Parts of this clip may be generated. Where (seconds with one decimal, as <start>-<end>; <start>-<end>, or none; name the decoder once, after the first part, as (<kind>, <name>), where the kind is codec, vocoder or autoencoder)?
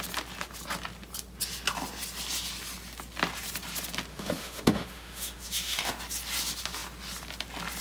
4.1-6.0 (autoencoder, DAC-VAE)